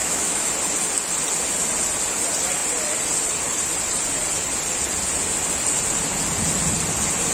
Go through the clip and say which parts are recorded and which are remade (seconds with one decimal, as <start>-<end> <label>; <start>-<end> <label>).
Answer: 0.0-0.5 remade; 0.5-7.3 recorded